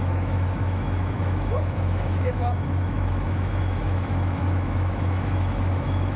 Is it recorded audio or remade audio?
remade